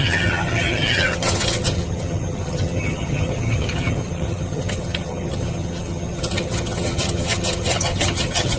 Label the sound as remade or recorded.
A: remade